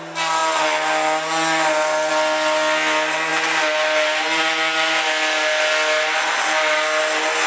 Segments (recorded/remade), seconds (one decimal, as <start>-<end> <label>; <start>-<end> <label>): 0.0-7.5 recorded